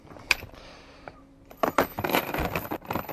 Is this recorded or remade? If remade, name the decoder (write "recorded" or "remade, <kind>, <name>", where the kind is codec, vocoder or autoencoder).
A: remade, vocoder, BigVGAN v2